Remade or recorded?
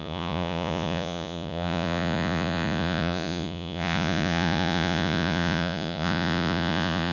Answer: remade